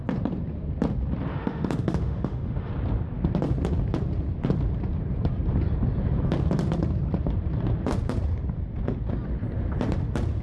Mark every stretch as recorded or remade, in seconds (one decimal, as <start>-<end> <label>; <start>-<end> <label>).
0.0-1.3 recorded; 1.3-2.7 remade; 2.7-10.4 recorded